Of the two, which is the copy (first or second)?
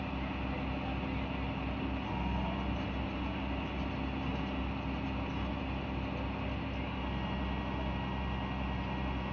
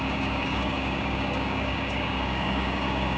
second